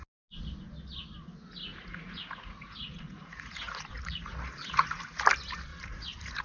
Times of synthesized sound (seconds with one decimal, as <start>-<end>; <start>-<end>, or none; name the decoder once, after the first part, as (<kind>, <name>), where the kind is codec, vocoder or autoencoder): 1.7-5.2 (vocoder, Vocos); 5.7-6.4